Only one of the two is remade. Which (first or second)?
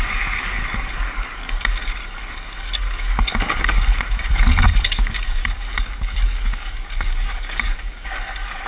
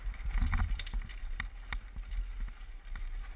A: first